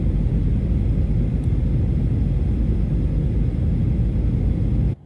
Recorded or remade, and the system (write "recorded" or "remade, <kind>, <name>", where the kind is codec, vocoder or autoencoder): recorded